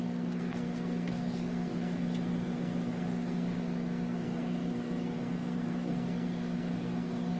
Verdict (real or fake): fake